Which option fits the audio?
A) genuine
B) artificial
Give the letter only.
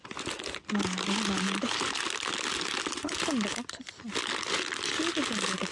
A